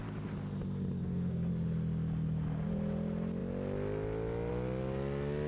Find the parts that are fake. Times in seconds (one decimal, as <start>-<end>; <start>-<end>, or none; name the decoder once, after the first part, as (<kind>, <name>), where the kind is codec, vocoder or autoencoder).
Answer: 1.0-1.5 (codec, SNAC)